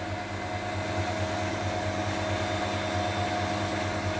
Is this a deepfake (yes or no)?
no